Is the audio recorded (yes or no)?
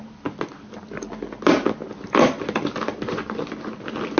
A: yes